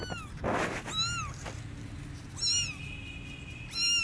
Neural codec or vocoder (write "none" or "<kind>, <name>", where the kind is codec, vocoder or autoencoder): none